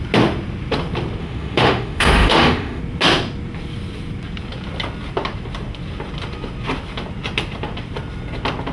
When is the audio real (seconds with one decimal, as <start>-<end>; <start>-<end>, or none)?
0.0-1.2; 2.8-8.7